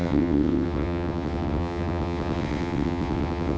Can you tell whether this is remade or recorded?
remade